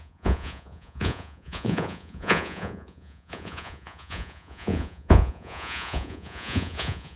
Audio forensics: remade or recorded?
remade